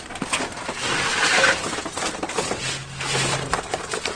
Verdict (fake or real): real